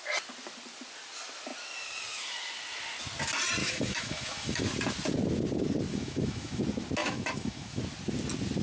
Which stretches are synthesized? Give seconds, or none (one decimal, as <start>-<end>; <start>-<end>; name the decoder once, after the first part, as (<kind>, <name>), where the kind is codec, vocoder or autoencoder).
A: 3.6-4.6 (autoencoder, DAC-VAE); 5.9-6.6; 7.0-7.8